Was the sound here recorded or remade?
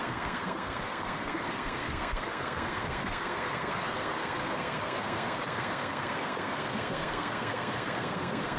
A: remade